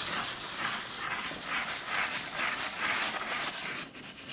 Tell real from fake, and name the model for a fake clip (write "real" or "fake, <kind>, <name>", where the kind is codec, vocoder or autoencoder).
real